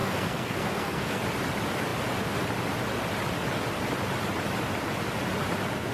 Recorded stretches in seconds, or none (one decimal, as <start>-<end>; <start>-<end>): 1.2-5.9